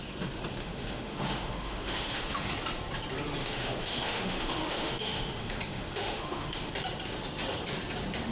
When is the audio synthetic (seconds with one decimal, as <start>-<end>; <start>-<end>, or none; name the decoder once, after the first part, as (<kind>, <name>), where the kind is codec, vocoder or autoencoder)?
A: 0.6-2.5 (autoencoder, DAC-VAE); 3.4-6.7